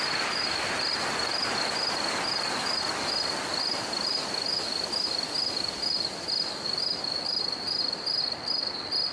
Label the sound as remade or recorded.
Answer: recorded